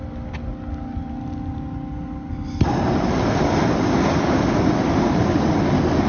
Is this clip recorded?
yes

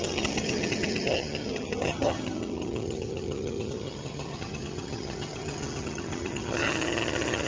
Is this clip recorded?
no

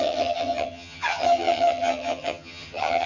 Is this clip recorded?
no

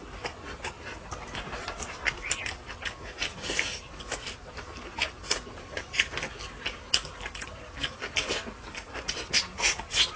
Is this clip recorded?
yes